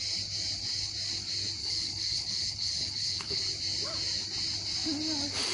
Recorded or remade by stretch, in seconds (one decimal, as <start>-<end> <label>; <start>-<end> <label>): 0.0-1.6 recorded; 1.6-3.4 remade; 3.4-5.5 recorded